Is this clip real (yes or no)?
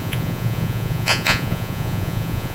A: no